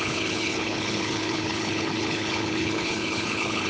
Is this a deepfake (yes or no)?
yes